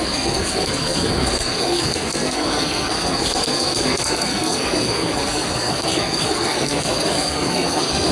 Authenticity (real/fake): fake